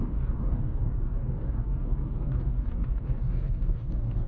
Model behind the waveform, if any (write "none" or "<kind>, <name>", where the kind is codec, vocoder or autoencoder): codec, DAC